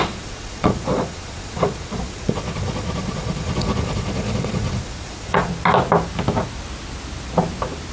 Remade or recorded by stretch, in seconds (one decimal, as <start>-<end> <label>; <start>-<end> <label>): 0.0-5.5 remade; 5.5-7.9 recorded